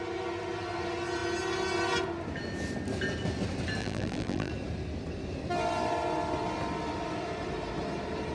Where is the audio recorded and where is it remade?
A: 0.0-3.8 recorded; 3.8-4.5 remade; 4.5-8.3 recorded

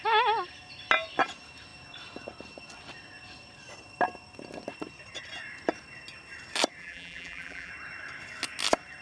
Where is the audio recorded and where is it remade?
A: 0.0-6.8 recorded; 6.8-7.7 remade; 7.7-9.0 recorded

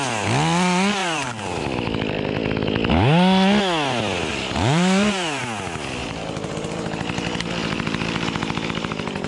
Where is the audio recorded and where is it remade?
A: 0.0-1.0 recorded; 1.0-1.6 remade; 1.6-4.3 recorded; 4.3-5.4 remade; 5.4-6.0 recorded; 6.0-9.3 remade

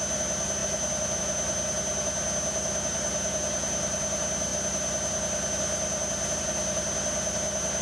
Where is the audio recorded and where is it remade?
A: 0.0-7.8 recorded

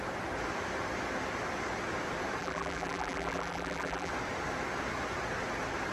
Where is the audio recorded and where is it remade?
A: 0.0-2.4 recorded; 2.4-4.1 remade; 4.1-5.9 recorded

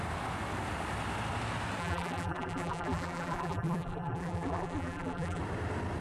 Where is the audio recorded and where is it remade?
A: 0.0-1.8 recorded; 1.8-5.4 remade; 5.4-6.0 recorded

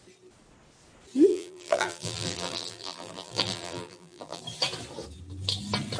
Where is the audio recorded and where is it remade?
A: 0.0-1.3 recorded; 1.3-4.4 remade; 4.4-6.0 recorded